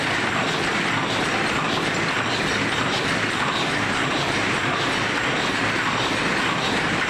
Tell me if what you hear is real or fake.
fake